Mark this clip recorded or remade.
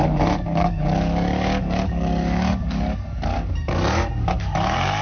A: remade